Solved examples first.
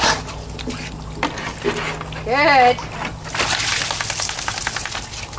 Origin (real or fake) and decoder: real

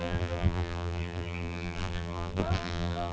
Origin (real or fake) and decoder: fake, vocoder, BigVGAN v2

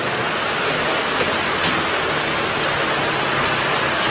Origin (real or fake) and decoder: real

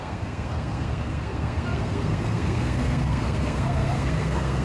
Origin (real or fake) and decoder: fake, codec, SNAC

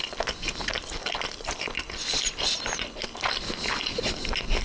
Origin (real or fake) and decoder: real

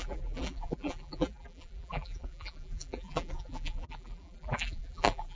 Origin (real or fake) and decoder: fake, vocoder, BigVGAN v2